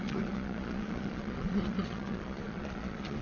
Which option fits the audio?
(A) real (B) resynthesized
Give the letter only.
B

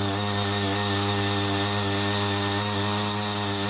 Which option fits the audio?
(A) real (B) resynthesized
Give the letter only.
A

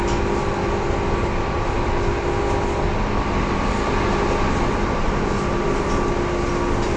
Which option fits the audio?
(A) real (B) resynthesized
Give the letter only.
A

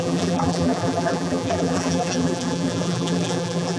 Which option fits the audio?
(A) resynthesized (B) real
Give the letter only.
A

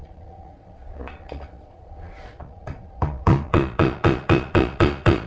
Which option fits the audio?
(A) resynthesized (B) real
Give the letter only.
A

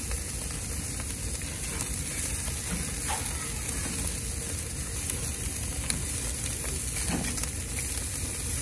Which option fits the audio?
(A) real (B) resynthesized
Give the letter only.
A